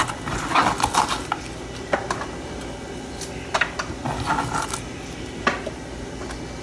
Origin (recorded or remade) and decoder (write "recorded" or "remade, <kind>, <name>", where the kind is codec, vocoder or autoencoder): recorded